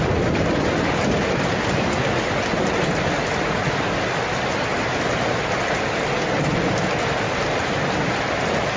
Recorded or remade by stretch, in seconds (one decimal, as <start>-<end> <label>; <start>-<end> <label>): 0.0-8.8 recorded